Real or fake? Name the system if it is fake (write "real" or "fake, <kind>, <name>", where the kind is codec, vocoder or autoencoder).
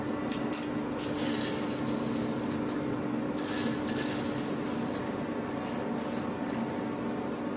real